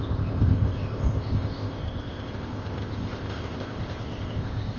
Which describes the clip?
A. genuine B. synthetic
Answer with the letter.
B